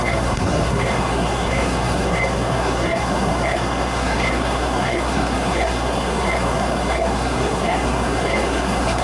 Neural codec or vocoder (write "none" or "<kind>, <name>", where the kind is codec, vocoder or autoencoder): codec, SNAC